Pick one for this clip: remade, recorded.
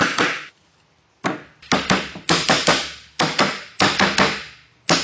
recorded